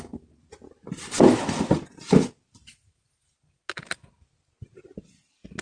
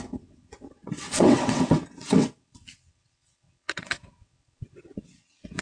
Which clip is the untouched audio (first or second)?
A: first